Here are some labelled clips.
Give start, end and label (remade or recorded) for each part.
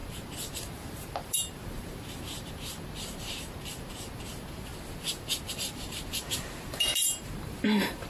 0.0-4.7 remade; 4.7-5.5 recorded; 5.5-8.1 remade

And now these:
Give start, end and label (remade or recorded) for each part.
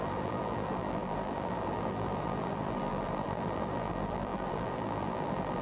0.0-5.6 remade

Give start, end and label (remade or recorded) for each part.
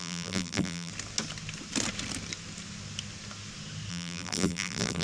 0.0-0.9 remade; 0.9-3.9 recorded; 3.9-5.0 remade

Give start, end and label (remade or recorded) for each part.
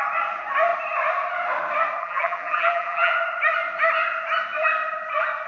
0.0-2.0 recorded; 2.0-3.1 remade; 3.1-5.5 recorded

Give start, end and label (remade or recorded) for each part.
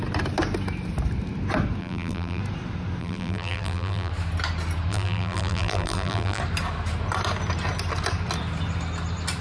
0.0-1.8 recorded; 1.8-2.4 remade; 2.4-3.0 recorded; 3.0-4.1 remade; 4.1-4.9 recorded; 4.9-6.4 remade; 6.4-9.4 recorded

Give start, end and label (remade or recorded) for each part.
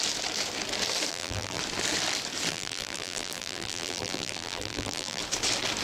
0.0-1.1 recorded; 1.1-1.6 remade; 1.6-2.5 recorded; 2.5-5.2 remade; 5.2-5.8 recorded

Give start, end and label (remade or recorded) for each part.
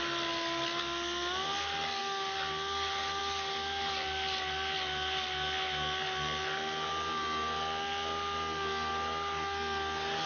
0.0-10.3 recorded